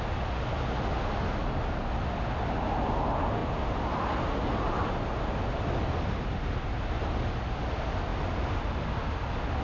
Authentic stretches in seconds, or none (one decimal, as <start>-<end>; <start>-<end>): 0.0-9.6